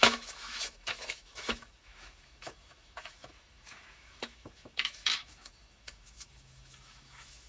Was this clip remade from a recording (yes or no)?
yes